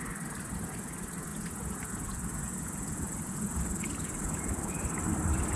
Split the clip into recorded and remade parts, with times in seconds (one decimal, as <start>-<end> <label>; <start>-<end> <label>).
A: 0.0-1.3 recorded; 1.3-4.7 remade; 4.7-5.6 recorded